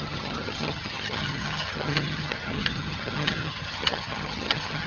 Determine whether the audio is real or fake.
fake